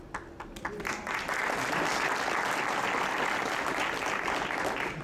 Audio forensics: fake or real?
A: real